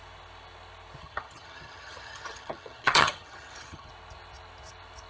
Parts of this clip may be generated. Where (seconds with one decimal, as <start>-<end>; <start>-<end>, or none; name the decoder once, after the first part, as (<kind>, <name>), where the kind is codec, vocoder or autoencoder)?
1.0-3.9 (vocoder, HiFi-GAN)